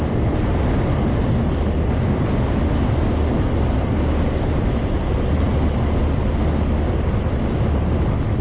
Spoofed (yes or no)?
no